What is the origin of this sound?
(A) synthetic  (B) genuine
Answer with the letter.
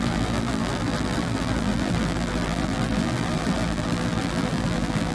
A